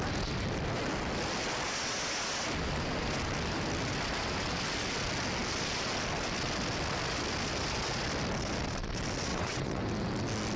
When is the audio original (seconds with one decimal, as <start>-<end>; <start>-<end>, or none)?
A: 0.0-9.3; 9.8-10.6